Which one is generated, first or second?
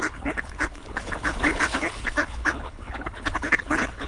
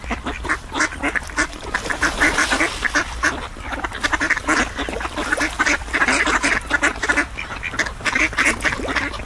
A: first